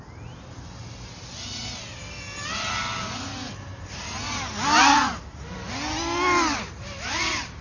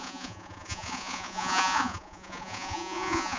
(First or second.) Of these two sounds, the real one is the first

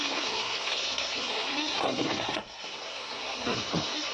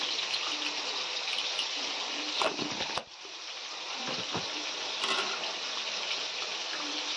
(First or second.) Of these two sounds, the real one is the second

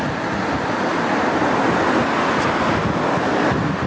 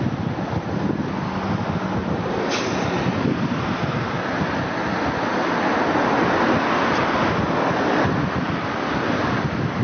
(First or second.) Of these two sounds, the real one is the second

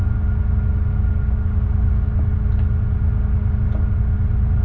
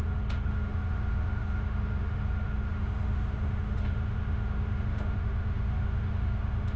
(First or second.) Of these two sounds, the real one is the first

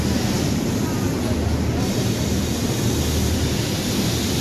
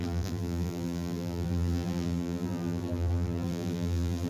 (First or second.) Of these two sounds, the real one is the first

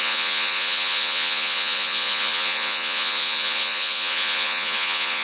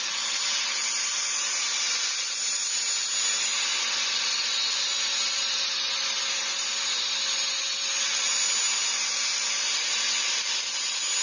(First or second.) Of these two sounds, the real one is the second